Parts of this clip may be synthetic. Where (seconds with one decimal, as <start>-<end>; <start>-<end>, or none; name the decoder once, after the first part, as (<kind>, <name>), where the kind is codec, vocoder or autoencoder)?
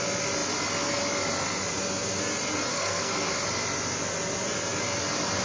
2.7-3.3 (codec, SNAC)